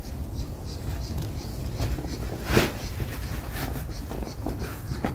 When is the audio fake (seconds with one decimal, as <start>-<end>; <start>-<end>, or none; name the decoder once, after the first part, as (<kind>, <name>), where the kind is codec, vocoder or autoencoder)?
0.0-1.5 (codec, DAC); 4.6-5.1